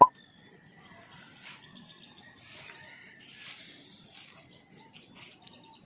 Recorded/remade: recorded